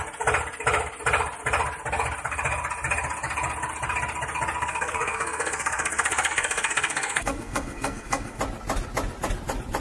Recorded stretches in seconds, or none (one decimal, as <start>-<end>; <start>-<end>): 0.0-4.6; 8.4-9.8